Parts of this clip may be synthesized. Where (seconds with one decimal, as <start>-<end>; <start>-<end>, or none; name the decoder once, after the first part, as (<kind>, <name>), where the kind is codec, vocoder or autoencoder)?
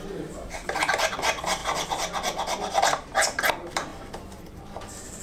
0.0-0.6 (vocoder, BigVGAN v2); 1.1-1.6; 3.5-5.2